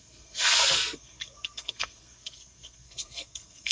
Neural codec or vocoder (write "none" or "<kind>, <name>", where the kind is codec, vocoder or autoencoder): codec, SNAC